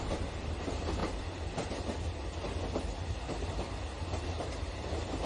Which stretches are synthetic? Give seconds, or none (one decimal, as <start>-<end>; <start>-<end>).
none